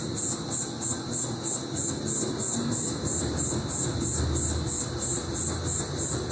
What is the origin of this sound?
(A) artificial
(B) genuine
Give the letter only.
B